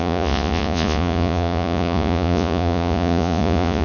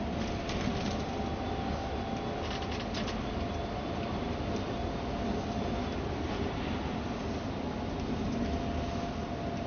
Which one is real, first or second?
second